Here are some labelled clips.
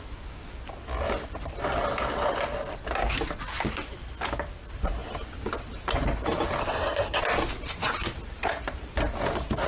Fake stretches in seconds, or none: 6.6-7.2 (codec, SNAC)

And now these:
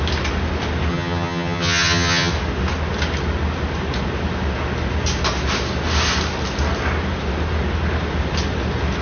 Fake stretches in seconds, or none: 0.9-2.3 (vocoder, HiFi-GAN)

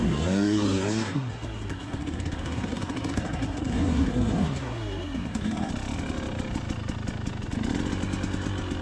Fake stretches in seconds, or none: 0.0-5.7 (codec, SNAC)

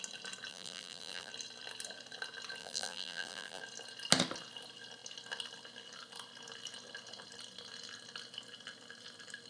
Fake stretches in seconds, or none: 0.5-1.3 (vocoder, BigVGAN v2); 2.6-3.6